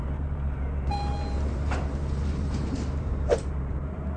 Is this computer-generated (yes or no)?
yes